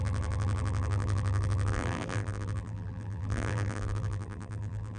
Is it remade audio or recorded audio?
remade